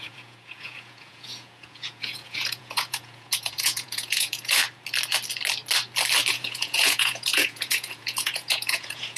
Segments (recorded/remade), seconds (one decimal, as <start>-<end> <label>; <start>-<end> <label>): 0.0-4.6 remade; 4.6-6.3 recorded; 6.3-9.2 remade